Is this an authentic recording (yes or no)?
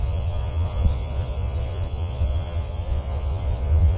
no